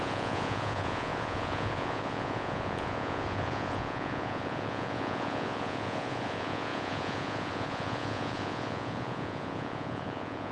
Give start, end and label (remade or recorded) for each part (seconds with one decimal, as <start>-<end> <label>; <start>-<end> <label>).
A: 0.0-10.5 remade